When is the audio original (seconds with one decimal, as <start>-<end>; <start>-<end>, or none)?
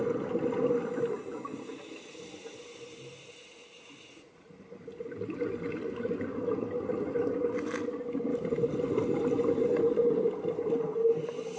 0.0-11.6